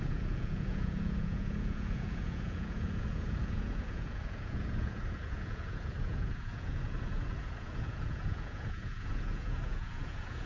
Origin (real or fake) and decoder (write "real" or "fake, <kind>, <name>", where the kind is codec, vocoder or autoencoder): fake, vocoder, Vocos